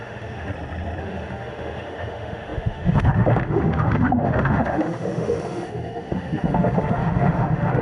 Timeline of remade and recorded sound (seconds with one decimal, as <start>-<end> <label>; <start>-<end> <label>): 0.0-0.5 remade; 0.5-1.0 recorded; 1.0-7.8 remade